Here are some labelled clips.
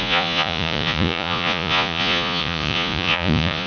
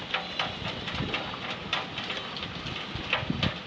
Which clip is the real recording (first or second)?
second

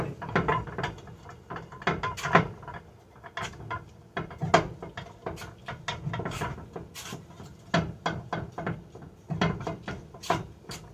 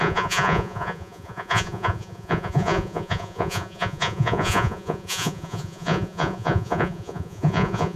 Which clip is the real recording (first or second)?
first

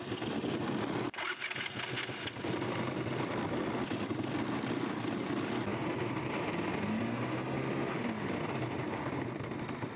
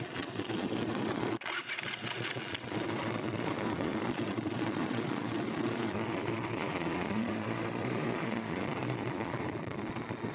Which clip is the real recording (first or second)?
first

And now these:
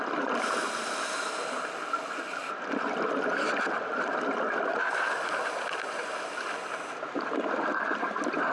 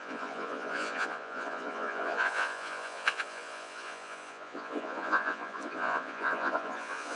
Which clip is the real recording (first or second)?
first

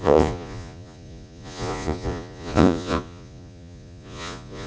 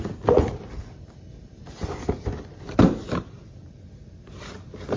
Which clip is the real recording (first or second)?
second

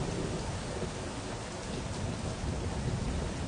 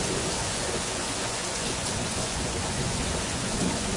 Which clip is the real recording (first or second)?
first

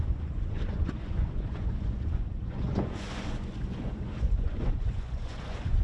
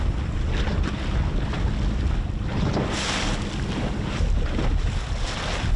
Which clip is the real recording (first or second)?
second